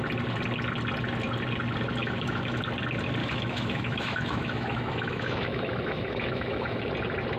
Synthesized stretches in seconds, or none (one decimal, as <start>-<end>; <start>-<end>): 2.0-2.6; 3.2-6.9